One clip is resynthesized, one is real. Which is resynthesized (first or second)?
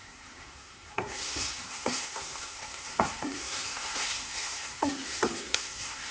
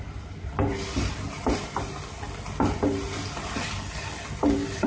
first